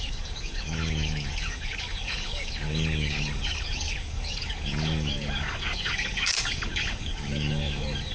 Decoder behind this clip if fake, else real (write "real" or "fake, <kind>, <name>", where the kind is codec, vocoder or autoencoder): fake, codec, DAC